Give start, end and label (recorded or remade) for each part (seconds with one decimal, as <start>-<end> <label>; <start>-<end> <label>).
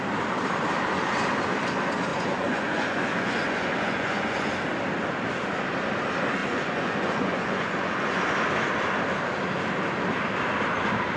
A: 0.0-2.1 recorded; 2.1-4.5 remade; 4.5-6.4 recorded; 6.4-8.2 remade; 8.2-11.2 recorded